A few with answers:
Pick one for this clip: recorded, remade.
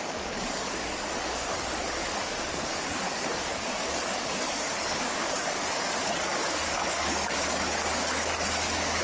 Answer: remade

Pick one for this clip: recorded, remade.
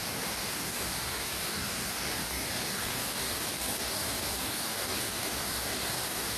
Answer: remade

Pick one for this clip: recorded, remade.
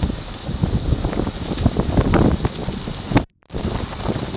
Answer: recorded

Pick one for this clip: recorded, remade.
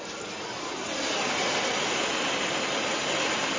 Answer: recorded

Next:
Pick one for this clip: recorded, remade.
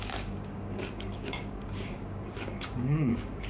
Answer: remade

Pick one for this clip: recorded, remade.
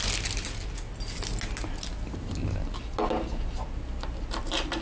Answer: recorded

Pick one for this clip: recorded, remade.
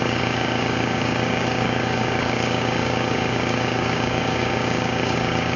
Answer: remade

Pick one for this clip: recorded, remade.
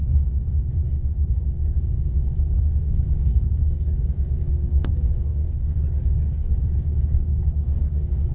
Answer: remade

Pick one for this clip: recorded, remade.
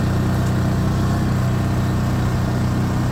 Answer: recorded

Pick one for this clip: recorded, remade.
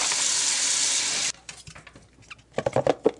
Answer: recorded